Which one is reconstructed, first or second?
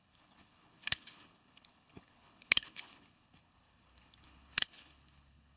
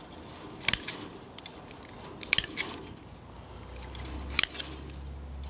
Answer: first